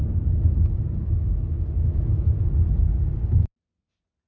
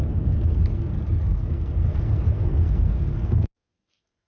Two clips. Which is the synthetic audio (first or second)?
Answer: second